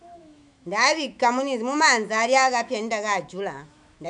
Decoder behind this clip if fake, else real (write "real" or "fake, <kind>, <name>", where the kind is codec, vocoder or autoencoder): fake, autoencoder, DAC-VAE